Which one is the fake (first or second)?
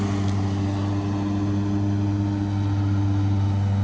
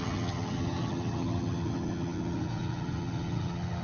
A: second